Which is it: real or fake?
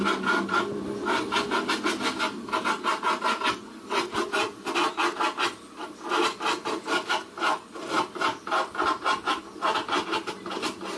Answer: real